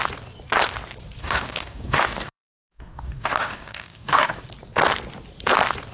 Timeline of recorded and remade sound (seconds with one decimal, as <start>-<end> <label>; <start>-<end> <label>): 0.0-1.2 recorded; 1.2-4.4 remade; 4.4-5.9 recorded